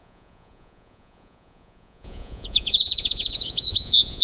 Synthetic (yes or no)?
yes